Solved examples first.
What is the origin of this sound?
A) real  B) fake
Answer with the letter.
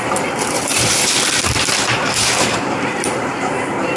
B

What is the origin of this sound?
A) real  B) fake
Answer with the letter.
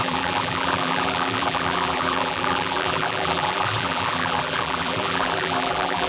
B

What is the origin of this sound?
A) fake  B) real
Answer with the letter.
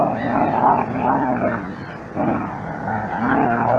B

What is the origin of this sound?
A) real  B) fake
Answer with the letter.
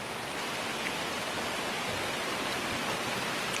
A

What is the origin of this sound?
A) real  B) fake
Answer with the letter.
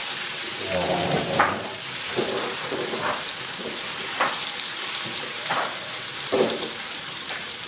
B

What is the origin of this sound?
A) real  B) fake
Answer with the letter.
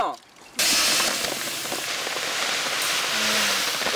A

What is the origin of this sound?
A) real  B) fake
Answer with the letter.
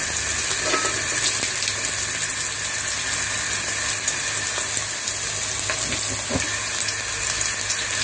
A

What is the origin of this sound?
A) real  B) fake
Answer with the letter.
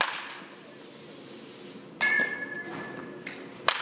A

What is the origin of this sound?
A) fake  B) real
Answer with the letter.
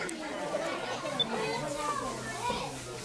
B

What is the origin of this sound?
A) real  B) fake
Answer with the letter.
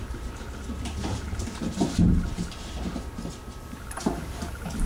B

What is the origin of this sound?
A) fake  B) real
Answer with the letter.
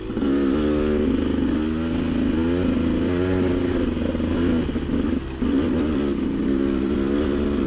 B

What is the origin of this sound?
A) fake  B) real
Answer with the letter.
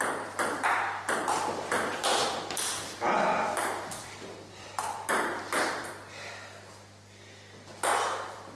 A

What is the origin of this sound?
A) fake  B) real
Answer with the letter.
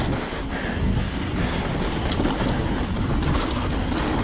B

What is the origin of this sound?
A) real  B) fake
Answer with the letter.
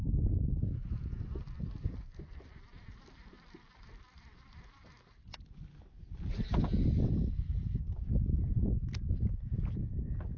A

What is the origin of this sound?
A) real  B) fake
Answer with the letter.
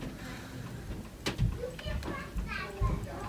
A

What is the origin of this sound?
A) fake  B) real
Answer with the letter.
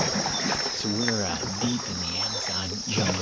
A